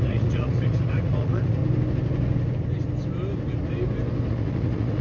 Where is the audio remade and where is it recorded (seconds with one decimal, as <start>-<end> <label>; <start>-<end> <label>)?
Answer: 0.0-1.6 remade; 1.6-4.3 recorded; 4.3-5.0 remade

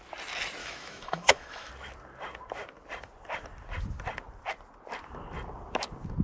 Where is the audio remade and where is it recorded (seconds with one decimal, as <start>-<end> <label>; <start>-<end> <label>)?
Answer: 0.0-0.6 recorded; 0.6-1.7 remade; 1.7-6.2 recorded

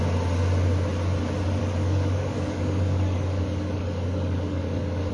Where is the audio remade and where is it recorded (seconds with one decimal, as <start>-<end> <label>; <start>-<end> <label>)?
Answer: 0.0-1.6 recorded; 1.6-5.1 remade